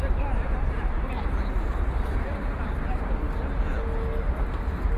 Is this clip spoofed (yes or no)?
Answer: no